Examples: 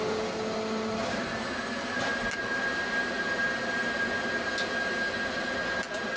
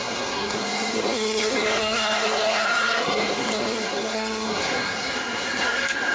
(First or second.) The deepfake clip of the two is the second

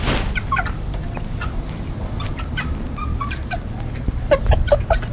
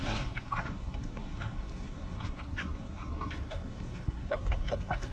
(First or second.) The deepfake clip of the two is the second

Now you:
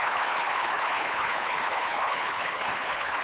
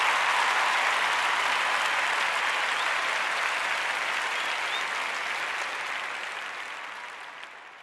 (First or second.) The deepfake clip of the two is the first